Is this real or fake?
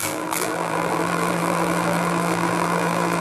fake